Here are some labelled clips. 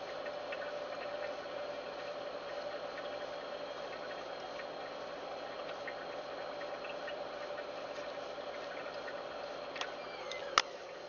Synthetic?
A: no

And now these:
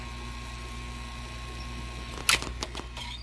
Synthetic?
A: no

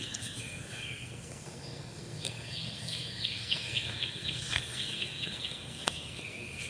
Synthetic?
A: yes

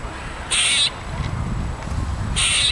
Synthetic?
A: no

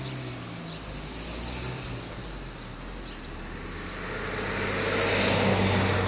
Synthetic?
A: no